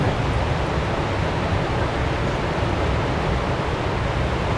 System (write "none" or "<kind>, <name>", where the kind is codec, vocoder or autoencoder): none